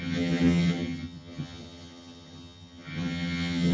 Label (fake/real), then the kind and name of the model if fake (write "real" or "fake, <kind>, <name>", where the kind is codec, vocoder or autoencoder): fake, vocoder, HiFi-GAN